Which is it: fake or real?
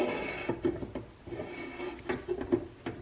real